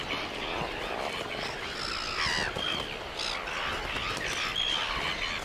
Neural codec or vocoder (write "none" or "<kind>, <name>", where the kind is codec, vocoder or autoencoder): none